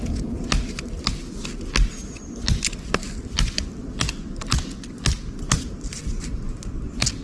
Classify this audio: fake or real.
real